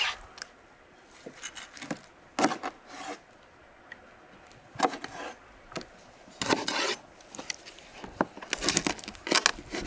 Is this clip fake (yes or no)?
no